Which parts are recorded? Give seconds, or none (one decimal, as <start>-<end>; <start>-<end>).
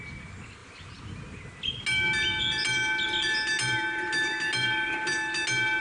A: 0.0-5.8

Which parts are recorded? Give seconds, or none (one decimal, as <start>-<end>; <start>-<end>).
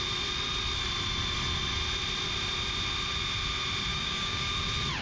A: 0.0-3.9; 4.5-5.0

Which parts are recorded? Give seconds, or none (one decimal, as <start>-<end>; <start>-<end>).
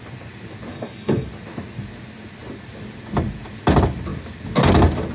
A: 0.0-0.7; 1.3-5.1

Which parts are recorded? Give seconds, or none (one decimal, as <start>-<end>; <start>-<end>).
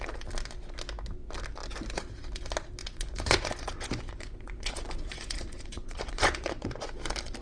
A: 0.0-2.8; 6.9-7.4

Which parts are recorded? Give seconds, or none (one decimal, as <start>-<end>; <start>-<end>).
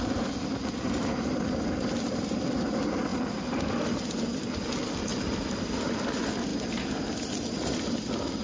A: 0.0-3.1; 3.7-5.1; 5.7-8.4